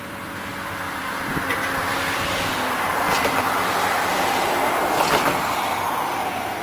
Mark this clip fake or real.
fake